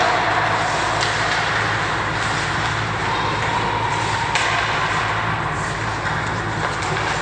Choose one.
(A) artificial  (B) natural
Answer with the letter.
B